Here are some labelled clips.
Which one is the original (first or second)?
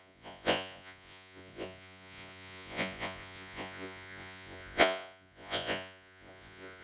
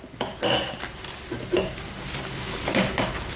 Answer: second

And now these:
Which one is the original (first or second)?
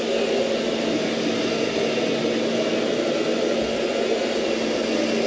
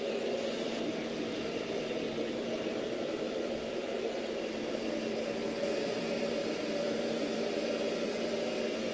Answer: first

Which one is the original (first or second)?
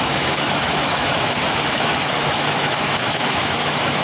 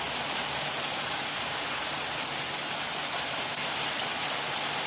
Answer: second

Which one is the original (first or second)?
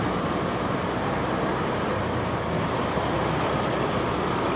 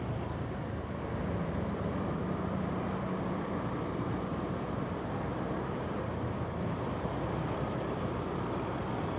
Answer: first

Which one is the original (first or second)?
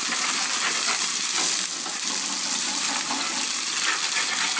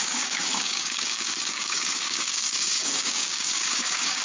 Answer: first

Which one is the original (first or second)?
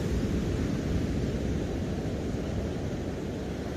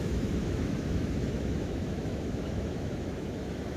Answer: first